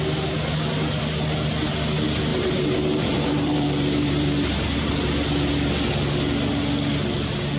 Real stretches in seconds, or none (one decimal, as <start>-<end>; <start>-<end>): 0.0-2.3; 4.9-7.6